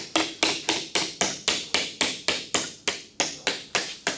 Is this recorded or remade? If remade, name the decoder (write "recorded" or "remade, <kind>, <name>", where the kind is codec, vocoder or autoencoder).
recorded